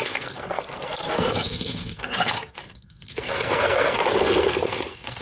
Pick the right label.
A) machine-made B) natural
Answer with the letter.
A